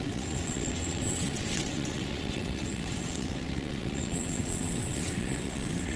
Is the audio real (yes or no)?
no